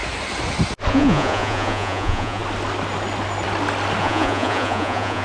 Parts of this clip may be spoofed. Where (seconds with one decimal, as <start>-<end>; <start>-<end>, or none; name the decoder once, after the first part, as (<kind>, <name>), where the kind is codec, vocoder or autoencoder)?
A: 0.9-2.4 (vocoder, Vocos); 4.0-5.2